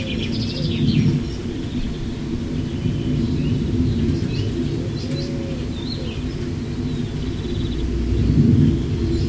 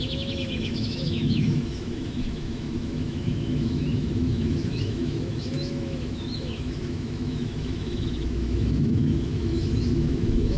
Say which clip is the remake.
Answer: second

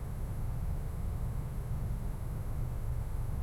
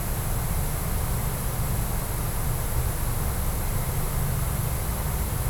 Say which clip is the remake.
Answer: first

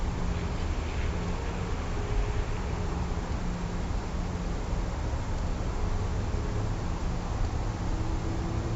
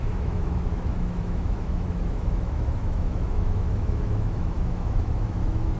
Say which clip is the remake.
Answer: second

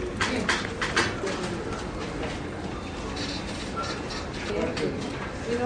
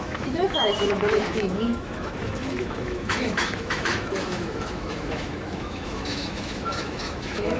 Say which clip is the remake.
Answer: second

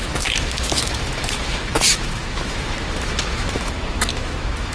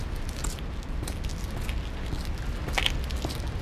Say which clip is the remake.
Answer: first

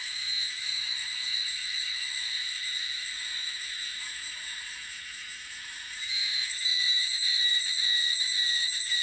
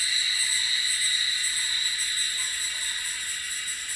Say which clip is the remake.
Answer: first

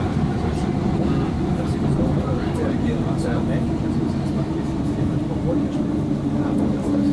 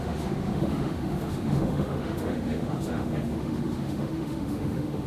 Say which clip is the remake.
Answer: second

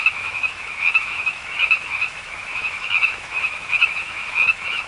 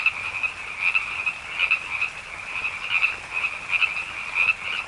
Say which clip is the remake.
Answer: first